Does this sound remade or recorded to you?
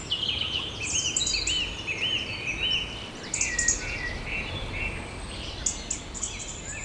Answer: recorded